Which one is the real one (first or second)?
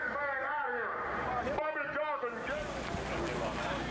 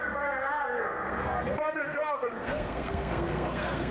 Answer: first